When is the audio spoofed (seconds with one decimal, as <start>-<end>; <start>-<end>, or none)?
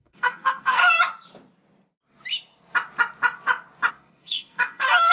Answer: 0.0-0.8; 3.9-5.1